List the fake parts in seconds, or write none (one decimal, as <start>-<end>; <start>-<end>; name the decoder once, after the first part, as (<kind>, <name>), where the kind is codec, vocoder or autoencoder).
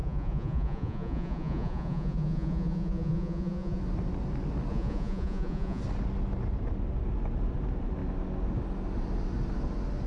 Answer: 0.0-3.8 (vocoder, Vocos); 4.7-5.8